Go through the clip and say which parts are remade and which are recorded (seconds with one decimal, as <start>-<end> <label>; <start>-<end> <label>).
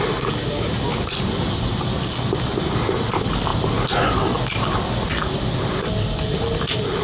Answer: 0.0-7.0 recorded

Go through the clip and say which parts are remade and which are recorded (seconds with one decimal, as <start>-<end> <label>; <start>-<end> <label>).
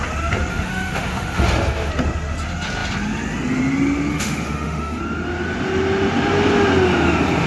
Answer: 0.0-0.5 recorded; 0.5-1.9 remade; 1.9-4.1 recorded; 4.1-5.0 remade; 5.0-7.5 recorded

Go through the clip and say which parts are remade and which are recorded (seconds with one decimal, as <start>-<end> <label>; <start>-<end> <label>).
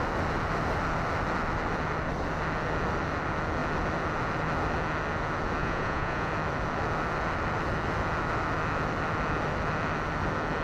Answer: 0.0-5.6 recorded; 5.6-6.3 remade; 6.3-10.6 recorded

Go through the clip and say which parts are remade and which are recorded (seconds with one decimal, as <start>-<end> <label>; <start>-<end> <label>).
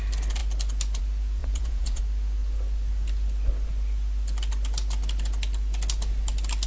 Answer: 0.0-1.4 recorded; 1.4-2.0 remade; 2.0-6.7 recorded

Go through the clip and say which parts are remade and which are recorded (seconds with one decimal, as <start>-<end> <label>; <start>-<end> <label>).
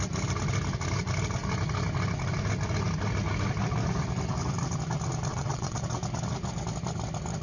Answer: 0.0-5.3 recorded; 5.3-5.8 remade; 5.8-7.4 recorded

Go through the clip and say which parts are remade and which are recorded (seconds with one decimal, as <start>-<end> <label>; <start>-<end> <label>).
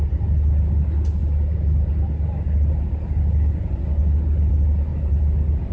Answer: 0.0-5.7 recorded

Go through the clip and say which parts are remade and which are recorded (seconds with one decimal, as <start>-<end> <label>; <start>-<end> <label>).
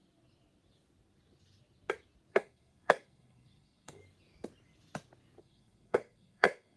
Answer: 0.0-2.3 recorded; 2.3-4.0 remade; 4.0-5.4 recorded; 5.4-6.8 remade